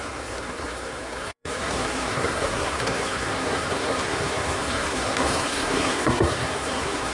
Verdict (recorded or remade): remade